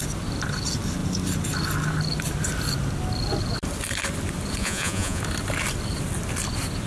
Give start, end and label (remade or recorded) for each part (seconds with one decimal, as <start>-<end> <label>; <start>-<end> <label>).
0.0-4.6 recorded; 4.6-5.2 remade; 5.2-6.9 recorded